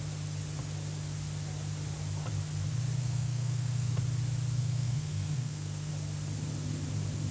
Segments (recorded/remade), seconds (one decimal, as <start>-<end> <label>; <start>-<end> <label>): 0.0-3.0 recorded; 3.0-3.9 remade; 3.9-4.6 recorded; 4.6-5.9 remade; 5.9-7.3 recorded